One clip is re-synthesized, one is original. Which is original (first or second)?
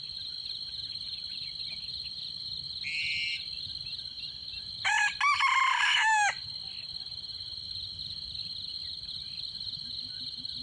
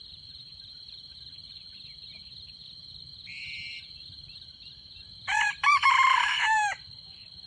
first